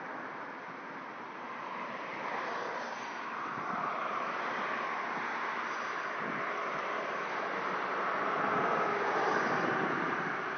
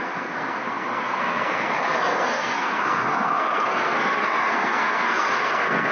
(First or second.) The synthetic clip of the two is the second